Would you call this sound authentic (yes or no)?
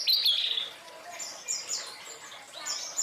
yes